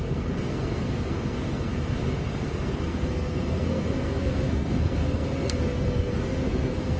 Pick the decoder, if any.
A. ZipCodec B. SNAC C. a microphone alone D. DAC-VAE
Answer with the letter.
B